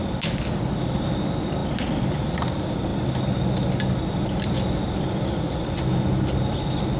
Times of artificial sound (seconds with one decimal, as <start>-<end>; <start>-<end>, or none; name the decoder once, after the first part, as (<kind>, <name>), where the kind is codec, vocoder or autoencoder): none